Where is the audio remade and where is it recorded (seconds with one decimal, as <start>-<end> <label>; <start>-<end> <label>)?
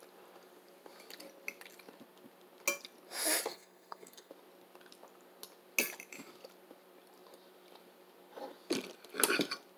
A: 0.0-3.5 recorded; 3.5-4.3 remade; 4.3-9.8 recorded